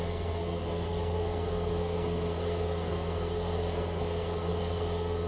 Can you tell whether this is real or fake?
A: fake